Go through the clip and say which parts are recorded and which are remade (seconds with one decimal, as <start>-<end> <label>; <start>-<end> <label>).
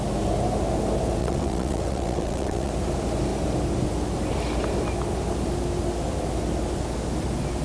0.0-1.2 recorded; 1.2-2.7 remade; 2.7-7.6 recorded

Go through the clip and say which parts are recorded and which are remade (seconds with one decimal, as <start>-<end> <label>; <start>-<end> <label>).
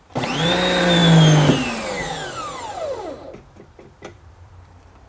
0.0-1.0 remade; 1.0-4.1 recorded; 4.1-5.1 remade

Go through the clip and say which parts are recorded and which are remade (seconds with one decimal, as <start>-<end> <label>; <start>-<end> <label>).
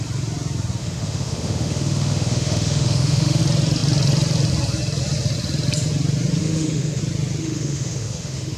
0.0-0.8 recorded; 0.8-3.4 remade; 3.4-6.4 recorded; 6.4-7.0 remade; 7.0-7.4 recorded; 7.4-8.6 remade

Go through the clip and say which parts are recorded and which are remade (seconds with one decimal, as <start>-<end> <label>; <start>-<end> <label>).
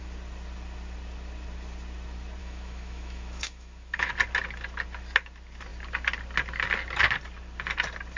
0.0-2.4 recorded; 2.4-4.1 remade; 4.1-8.2 recorded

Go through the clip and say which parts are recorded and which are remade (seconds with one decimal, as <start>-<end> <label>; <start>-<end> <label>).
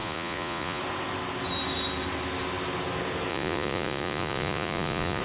0.0-0.8 remade; 0.8-3.3 recorded; 3.3-5.2 remade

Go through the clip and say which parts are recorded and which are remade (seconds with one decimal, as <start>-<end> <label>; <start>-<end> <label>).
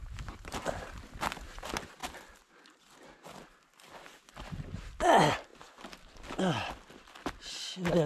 0.0-8.1 recorded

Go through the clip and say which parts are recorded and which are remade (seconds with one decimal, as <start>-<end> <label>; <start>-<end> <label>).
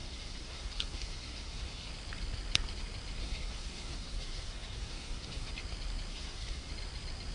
0.0-1.9 remade; 1.9-3.2 recorded; 3.2-5.5 remade; 5.5-6.1 recorded; 6.1-6.7 remade; 6.7-7.3 recorded